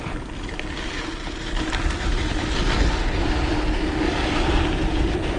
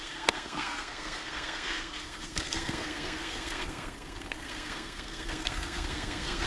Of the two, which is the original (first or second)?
first